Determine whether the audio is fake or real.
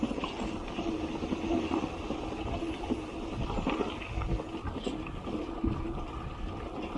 real